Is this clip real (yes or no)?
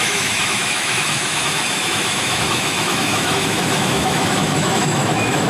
no